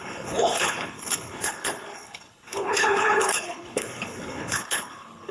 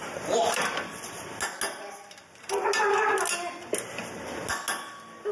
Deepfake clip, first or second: first